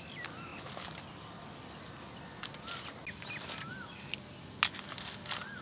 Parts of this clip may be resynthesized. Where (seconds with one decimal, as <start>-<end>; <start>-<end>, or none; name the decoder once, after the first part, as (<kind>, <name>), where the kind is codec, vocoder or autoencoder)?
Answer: none